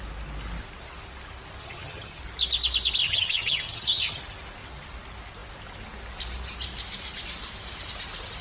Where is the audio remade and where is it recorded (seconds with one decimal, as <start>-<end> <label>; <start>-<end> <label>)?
0.0-1.6 recorded; 1.6-2.2 remade; 2.2-3.0 recorded; 3.0-4.2 remade; 4.2-8.4 recorded